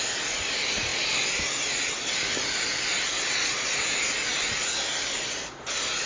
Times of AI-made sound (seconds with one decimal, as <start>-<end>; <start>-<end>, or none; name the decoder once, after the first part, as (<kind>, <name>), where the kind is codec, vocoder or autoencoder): none